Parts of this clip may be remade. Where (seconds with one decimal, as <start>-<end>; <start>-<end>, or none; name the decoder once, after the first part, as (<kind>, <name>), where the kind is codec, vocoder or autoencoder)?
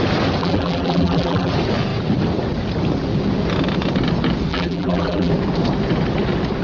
0.4-1.5 (vocoder, BigVGAN v2); 4.5-5.3